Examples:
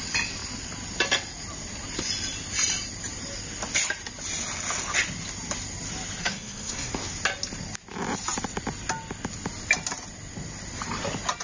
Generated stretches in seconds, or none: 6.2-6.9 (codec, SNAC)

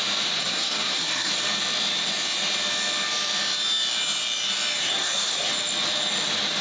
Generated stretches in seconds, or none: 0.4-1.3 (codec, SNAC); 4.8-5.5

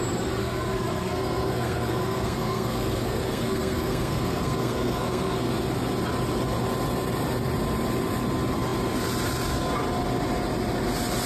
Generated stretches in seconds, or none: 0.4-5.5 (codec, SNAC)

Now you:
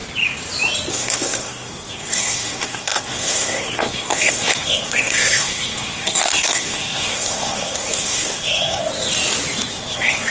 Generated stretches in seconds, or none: 0.9-8.8 (codec, SNAC); 9.7-10.3